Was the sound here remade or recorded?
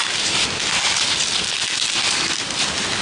recorded